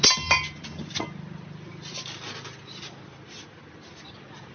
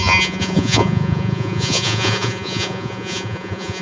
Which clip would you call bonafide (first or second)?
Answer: first